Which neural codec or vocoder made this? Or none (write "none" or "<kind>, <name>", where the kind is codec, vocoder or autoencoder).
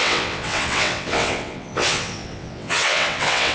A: vocoder, WaveNeXt